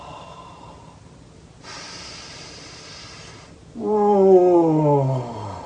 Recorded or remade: recorded